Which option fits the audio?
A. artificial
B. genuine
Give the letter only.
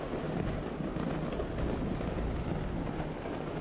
B